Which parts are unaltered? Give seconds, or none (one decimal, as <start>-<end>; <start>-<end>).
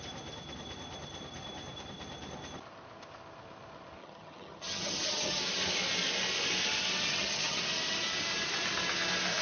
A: 0.0-4.0; 5.4-7.1; 7.6-9.4